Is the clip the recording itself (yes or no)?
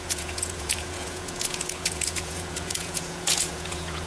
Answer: no